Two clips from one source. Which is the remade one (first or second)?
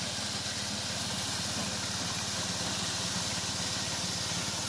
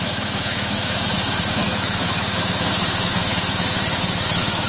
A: second